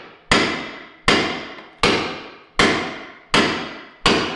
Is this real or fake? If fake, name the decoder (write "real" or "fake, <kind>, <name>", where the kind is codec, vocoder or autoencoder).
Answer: real